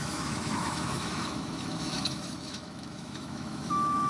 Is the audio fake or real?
fake